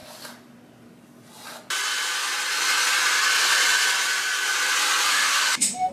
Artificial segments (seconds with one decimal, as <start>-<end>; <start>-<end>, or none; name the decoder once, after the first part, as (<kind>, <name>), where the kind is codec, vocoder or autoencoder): 5.1-5.9 (autoencoder, DAC-VAE)